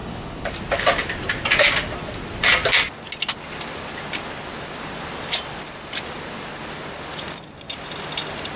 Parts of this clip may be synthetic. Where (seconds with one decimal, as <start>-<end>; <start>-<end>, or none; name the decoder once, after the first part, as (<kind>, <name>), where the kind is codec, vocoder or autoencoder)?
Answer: 0.0-0.5 (codec, HILCodec)